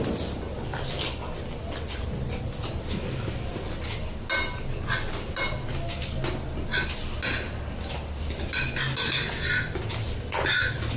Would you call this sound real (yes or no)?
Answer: yes